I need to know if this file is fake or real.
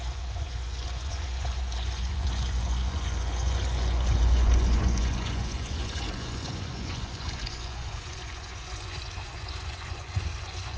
fake